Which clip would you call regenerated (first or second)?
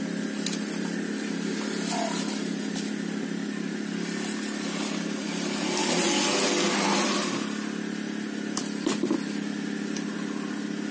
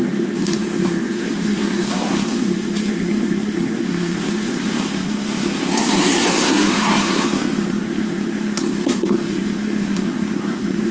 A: second